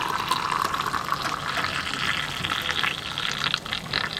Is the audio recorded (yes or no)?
yes